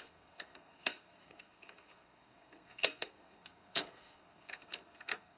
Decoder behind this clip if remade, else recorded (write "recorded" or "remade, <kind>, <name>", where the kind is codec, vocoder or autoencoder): remade, codec, SNAC